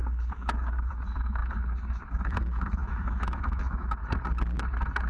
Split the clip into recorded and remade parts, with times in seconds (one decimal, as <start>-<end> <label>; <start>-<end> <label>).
0.0-4.0 remade; 4.0-5.1 recorded